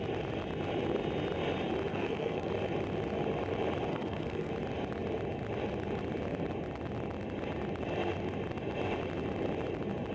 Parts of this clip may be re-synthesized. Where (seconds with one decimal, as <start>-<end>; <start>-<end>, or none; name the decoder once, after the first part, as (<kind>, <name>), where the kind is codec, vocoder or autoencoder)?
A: 1.9-2.5 (codec, SNAC); 3.9-4.5